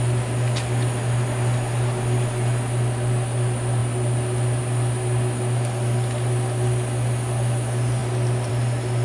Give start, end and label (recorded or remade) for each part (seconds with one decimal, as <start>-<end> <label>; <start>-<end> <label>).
0.0-9.0 recorded

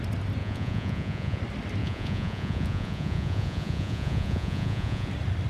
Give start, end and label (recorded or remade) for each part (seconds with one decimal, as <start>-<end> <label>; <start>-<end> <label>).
0.0-0.4 recorded; 0.4-1.4 remade; 1.4-1.8 recorded; 1.8-5.1 remade; 5.1-5.5 recorded

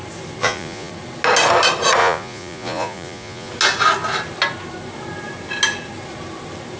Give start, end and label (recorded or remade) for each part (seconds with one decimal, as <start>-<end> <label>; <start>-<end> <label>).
0.0-0.4 recorded; 0.4-0.9 remade; 0.9-2.0 recorded; 2.0-3.5 remade; 3.5-6.8 recorded

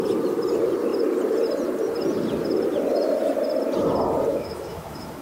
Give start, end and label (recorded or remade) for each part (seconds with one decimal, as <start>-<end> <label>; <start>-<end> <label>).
0.0-4.3 recorded; 4.3-5.2 remade

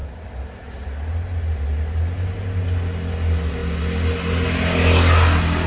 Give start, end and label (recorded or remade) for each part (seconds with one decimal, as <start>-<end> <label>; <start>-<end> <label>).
0.0-5.7 recorded